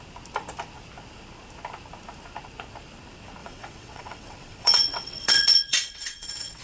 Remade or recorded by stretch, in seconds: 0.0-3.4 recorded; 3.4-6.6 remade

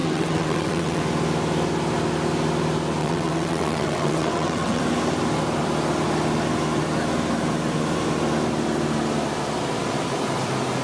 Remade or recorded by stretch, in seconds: 0.0-1.0 remade; 1.0-3.0 recorded; 3.0-4.8 remade; 4.8-10.8 recorded

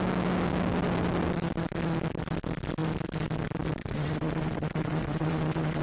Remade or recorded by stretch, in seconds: 0.0-3.8 recorded; 3.8-5.8 remade

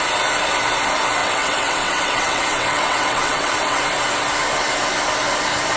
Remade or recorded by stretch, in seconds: 0.0-1.2 recorded; 1.2-3.8 remade; 3.8-5.8 recorded